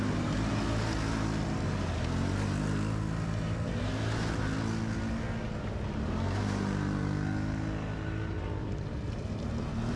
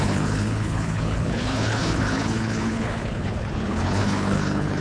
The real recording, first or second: first